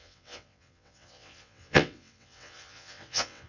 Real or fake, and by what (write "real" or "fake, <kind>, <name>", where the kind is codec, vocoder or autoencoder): fake, vocoder, WaveNeXt